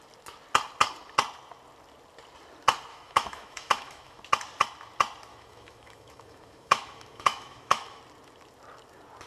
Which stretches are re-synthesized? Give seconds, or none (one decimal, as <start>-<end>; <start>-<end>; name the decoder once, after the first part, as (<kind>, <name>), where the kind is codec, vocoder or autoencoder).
2.9-4.2 (autoencoder, DAC-VAE); 5.3-8.0